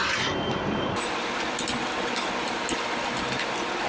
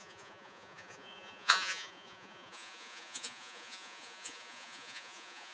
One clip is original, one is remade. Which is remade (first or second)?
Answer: second